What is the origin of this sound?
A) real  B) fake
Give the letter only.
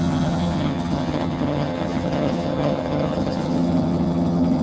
B